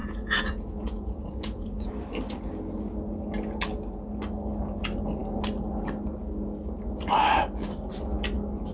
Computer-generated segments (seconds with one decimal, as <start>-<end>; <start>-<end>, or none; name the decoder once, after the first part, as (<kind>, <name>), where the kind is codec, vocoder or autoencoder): 0.0-1.9 (vocoder, Vocos)